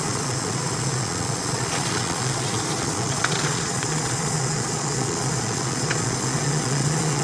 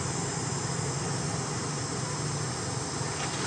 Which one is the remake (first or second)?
first